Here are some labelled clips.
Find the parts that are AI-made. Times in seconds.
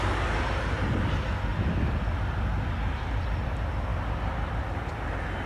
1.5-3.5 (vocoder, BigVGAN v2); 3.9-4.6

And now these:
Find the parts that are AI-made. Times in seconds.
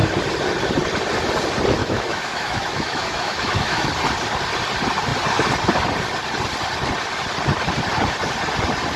1.8-3.9 (autoencoder, DAC-VAE)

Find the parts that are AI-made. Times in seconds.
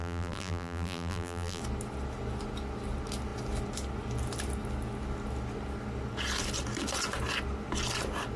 0.0-1.6 (vocoder, BigVGAN v2)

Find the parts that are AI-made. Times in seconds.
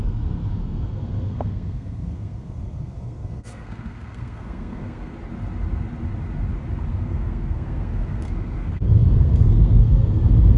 0.0-5.1 (codec, SNAC); 6.9-10.6